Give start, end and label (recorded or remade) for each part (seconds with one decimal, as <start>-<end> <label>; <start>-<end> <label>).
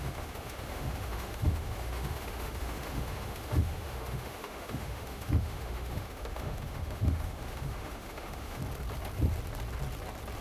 0.0-8.6 remade; 8.6-10.4 recorded